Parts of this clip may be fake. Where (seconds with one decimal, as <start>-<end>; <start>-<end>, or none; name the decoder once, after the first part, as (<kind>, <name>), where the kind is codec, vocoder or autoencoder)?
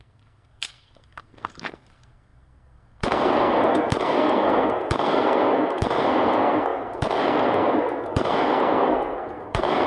0.0-9.9 (codec, SNAC)